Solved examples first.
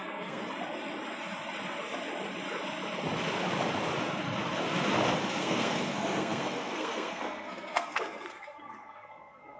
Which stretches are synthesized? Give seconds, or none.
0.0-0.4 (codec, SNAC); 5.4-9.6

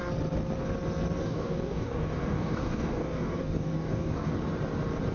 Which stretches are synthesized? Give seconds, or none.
1.2-4.3 (codec, DAC)

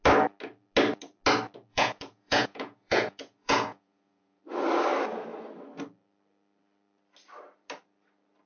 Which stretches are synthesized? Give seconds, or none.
1.7-4.4 (vocoder, Vocos)

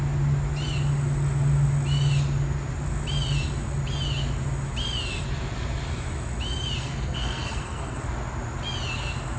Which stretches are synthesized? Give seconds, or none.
6.8-8.0 (codec, SNAC)

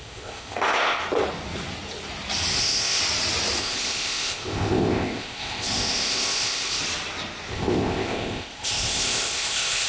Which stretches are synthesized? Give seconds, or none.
0.0-1.0 (codec, ZipCodec); 2.6-3.0; 3.6-6.8; 7.5-9.9

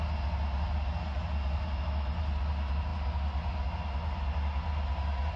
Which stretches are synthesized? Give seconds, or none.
none

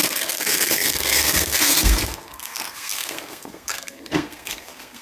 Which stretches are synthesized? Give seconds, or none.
0.0-5.0 (codec, SNAC)

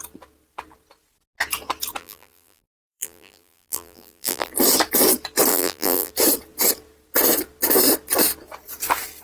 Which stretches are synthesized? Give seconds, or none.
2.0-4.5 (vocoder, BigVGAN v2); 5.5-6.1